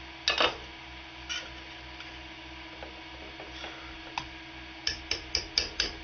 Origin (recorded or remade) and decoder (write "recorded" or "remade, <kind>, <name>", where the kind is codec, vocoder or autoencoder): recorded